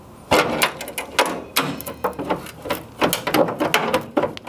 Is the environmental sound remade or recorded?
recorded